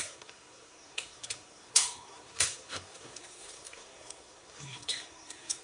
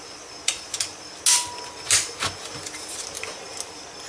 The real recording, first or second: second